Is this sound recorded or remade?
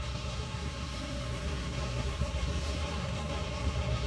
remade